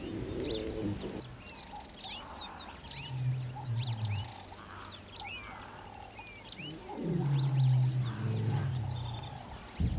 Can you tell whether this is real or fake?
real